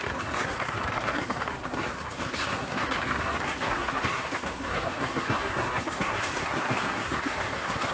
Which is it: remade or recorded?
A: remade